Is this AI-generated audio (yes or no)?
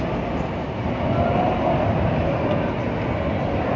no